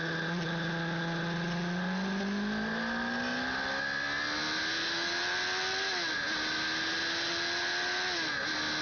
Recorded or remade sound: recorded